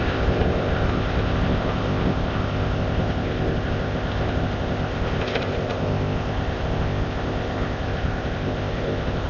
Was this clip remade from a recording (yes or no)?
yes